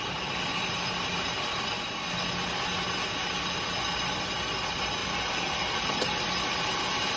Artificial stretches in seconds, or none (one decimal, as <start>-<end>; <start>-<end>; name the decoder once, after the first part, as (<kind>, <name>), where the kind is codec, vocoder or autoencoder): 5.0-7.2 (vocoder, BigVGAN v2)